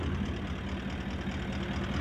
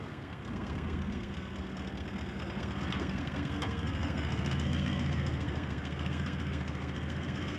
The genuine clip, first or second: first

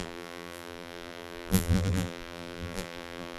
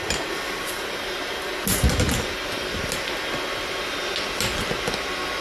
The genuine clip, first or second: second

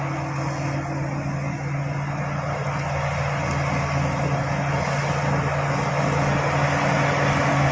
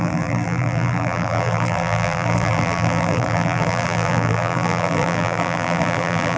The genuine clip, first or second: first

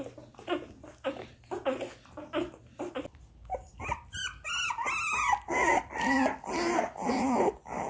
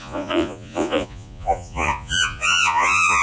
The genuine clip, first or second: first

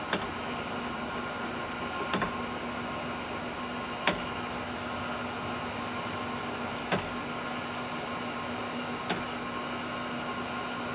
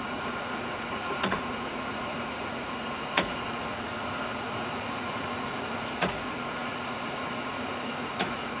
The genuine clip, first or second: first